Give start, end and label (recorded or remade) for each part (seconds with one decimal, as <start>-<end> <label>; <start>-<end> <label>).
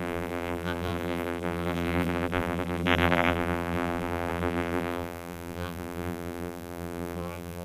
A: 0.0-7.6 remade